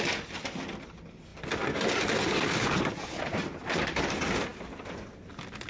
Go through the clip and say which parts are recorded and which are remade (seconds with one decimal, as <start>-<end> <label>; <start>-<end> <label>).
0.0-1.3 recorded; 1.3-2.8 remade; 2.8-5.7 recorded